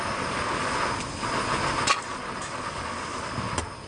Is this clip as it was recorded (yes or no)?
yes